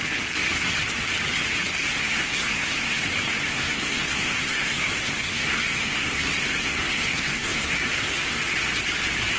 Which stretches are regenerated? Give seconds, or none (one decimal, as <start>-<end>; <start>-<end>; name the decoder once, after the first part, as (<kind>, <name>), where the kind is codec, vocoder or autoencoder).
1.8-3.0 (codec, SNAC); 3.5-8.4